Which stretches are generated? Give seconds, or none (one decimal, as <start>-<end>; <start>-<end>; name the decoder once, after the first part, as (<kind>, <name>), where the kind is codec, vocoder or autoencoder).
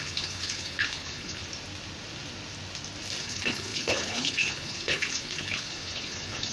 0.0-1.4 (codec, HILCodec); 3.2-6.5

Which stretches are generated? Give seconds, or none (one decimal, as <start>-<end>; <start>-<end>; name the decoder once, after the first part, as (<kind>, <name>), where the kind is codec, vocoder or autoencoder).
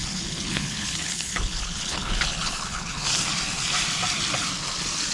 0.0-3.1 (codec, HILCodec)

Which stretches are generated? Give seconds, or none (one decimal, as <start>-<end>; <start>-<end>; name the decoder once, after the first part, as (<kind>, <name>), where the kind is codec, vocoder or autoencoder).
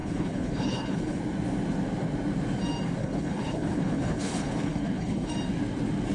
0.0-1.2 (codec, HILCodec); 3.0-5.3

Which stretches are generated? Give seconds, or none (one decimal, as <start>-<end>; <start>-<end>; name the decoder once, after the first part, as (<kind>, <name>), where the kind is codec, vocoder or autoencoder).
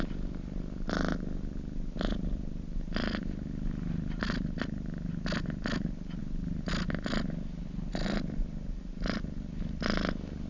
none